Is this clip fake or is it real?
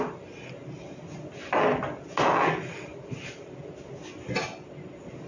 real